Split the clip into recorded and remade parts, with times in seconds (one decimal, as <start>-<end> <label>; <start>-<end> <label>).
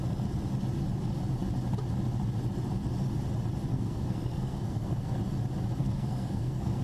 0.0-3.7 recorded; 3.7-5.2 remade; 5.2-5.8 recorded; 5.8-6.8 remade